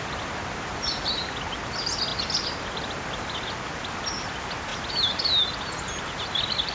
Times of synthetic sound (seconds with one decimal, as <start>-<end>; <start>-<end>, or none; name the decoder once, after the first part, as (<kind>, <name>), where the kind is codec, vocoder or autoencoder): none